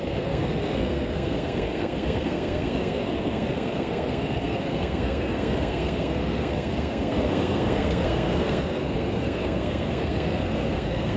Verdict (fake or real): fake